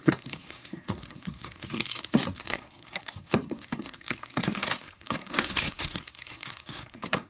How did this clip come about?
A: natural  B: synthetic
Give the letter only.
B